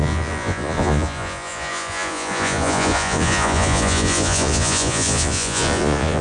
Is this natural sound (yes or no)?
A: no